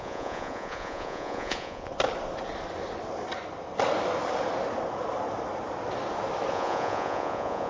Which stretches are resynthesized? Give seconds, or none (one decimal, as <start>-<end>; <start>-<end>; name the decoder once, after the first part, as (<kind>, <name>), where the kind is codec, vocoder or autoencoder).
0.0-1.9 (vocoder, Vocos); 6.5-7.7